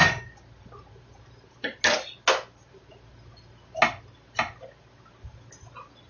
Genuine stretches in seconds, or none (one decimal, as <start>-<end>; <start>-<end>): 0.0-6.1